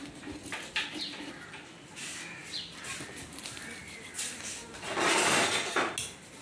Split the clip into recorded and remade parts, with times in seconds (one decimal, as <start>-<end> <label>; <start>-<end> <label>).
0.0-2.4 recorded; 2.4-3.0 remade; 3.0-3.8 recorded; 3.8-4.3 remade; 4.3-6.4 recorded

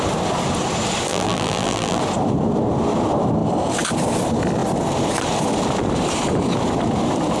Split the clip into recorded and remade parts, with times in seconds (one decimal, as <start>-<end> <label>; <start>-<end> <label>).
0.0-1.1 recorded; 1.1-2.0 remade; 2.0-7.4 recorded

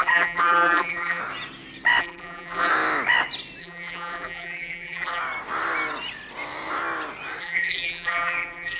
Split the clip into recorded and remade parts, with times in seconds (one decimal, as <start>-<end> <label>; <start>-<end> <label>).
0.0-1.2 remade; 1.2-2.0 recorded; 2.0-2.7 remade; 2.7-3.6 recorded; 3.6-5.2 remade; 5.2-7.4 recorded; 7.4-8.8 remade

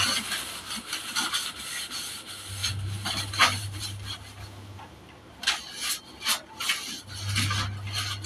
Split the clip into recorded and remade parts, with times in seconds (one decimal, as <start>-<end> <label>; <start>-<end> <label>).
0.0-2.6 recorded; 2.6-4.2 remade; 4.2-8.3 recorded

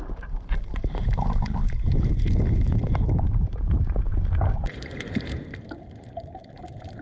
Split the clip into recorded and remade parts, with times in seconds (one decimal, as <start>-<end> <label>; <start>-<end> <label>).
0.0-1.6 remade; 1.6-3.2 recorded; 3.2-7.0 remade

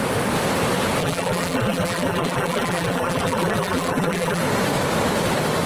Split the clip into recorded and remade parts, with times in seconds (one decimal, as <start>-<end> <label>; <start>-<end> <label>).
0.0-1.0 recorded; 1.0-4.4 remade; 4.4-5.7 recorded